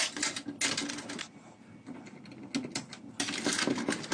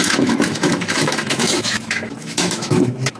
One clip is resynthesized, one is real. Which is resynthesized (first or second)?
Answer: second